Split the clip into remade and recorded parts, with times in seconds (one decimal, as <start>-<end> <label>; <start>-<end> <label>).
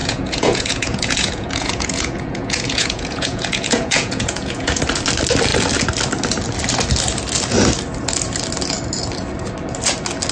0.0-4.8 remade; 4.8-10.3 recorded